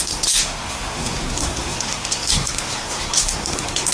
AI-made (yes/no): yes